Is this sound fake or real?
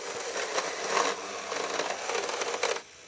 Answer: real